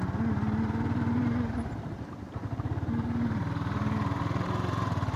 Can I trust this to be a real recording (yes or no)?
yes